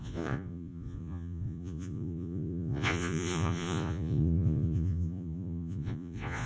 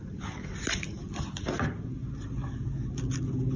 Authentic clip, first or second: second